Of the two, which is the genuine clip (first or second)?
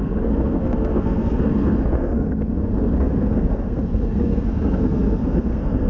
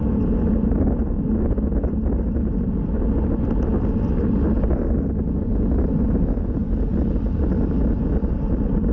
second